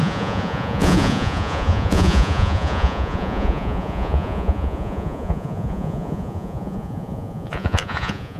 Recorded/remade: remade